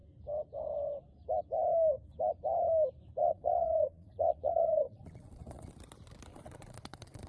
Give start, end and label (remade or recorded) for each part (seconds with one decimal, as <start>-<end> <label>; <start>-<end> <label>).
0.0-3.2 recorded; 3.2-5.7 remade; 5.7-6.3 recorded; 6.3-7.3 remade